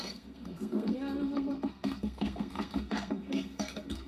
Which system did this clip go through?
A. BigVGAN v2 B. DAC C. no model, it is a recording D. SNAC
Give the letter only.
D